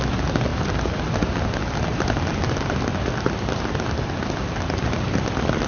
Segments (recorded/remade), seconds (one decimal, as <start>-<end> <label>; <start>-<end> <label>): 0.0-5.7 recorded